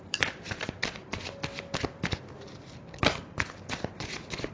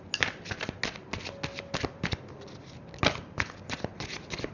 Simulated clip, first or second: first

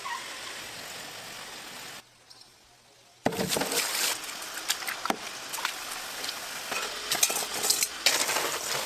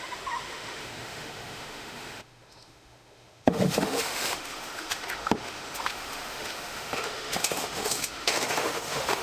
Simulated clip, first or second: second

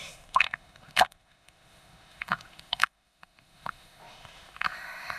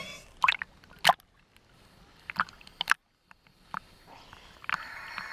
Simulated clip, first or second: first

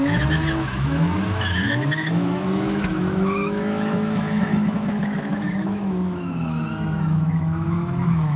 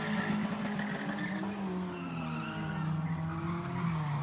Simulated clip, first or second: first